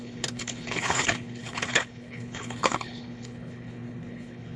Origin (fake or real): fake